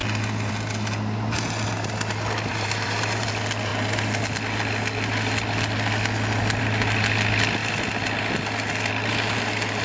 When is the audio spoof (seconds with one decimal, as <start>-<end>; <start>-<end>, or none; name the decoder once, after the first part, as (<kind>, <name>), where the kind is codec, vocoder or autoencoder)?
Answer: 2.5-3.3 (vocoder, BigVGAN v2)